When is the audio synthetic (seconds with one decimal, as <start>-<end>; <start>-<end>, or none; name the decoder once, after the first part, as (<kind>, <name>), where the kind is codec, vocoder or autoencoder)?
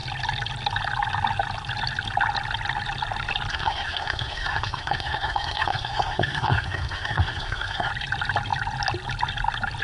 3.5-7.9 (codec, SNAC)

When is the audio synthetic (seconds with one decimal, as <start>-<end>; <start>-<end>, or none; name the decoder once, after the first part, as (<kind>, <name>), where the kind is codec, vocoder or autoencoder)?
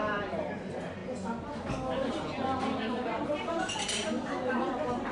0.0-1.0 (vocoder, BigVGAN v2); 2.1-5.1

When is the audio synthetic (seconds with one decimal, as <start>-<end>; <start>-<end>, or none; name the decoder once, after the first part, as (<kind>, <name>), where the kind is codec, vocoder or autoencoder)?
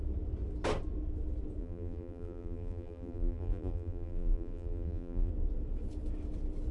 1.6-5.3 (vocoder, BigVGAN v2)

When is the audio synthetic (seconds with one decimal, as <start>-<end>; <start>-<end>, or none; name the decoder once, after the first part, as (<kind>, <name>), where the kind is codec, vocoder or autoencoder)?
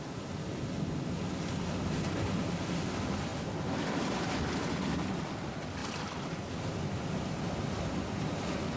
5.8-7.4 (vocoder, BigVGAN v2)